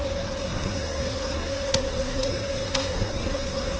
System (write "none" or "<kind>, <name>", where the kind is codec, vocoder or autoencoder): codec, SNAC